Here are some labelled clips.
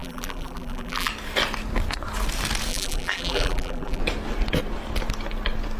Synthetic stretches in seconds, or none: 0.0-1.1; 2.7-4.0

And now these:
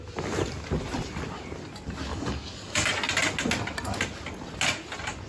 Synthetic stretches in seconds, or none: 2.1-2.9

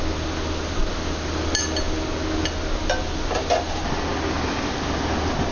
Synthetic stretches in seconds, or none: none

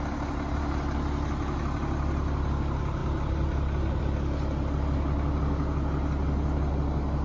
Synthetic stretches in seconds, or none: none

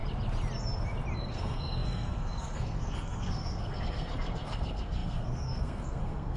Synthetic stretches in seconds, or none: 1.2-6.4

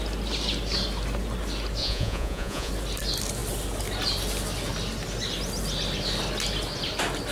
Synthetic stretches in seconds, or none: 1.8-2.7

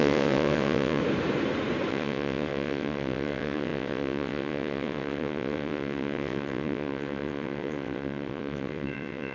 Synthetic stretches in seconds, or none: 0.0-1.0; 1.9-9.3